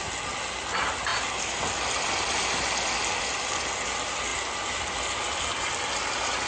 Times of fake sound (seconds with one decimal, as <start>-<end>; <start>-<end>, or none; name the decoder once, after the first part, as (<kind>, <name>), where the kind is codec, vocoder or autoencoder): none